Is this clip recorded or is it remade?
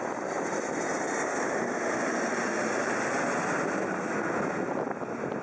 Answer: recorded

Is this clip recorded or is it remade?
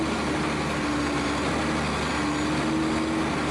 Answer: recorded